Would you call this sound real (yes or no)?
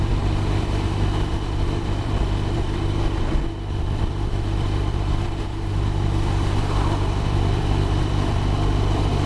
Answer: no